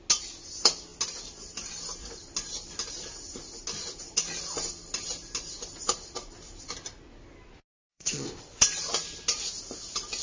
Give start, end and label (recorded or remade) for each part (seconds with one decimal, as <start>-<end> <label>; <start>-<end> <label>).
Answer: 0.0-7.9 recorded; 7.9-8.4 remade; 8.4-10.2 recorded